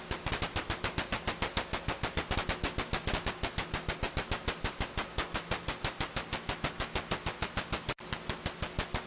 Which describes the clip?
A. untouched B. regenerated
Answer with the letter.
A